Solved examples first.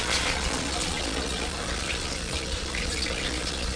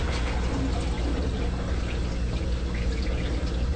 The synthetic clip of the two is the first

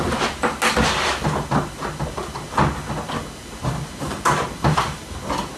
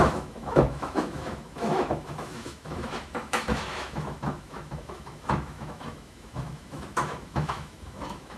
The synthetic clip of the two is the second